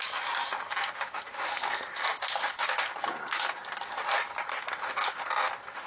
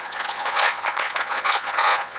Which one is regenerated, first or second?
second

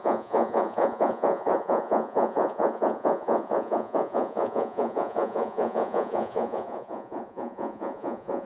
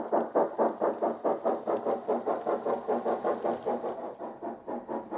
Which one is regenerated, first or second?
first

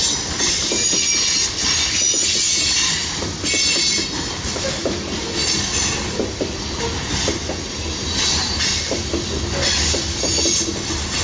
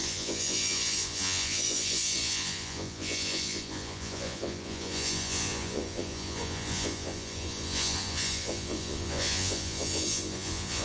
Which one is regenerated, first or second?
second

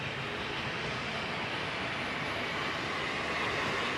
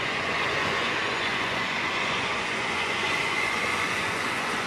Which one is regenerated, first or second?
second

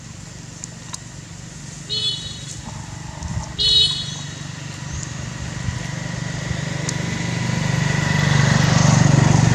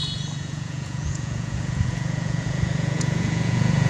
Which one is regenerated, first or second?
second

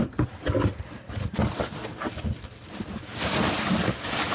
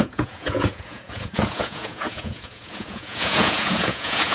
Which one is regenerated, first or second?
second